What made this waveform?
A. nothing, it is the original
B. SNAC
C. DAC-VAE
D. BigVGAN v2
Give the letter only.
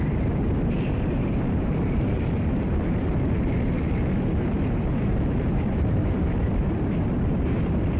D